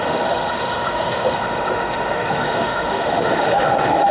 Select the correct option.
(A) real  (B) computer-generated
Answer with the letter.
B